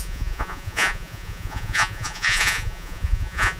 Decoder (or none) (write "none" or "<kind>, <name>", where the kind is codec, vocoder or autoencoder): vocoder, Vocos